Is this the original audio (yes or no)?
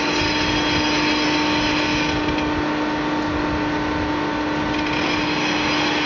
yes